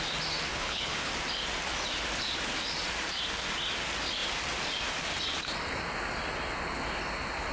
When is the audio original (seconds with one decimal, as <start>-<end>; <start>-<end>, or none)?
0.0-0.5; 1.1-7.5